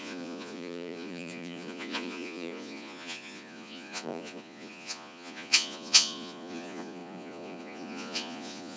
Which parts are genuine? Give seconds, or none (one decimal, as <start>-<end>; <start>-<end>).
none